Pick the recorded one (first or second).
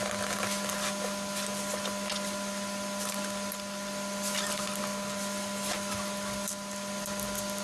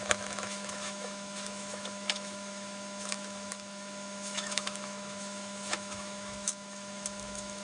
first